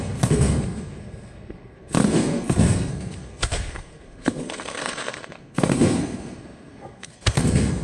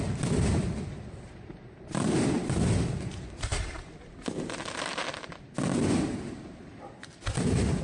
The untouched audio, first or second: second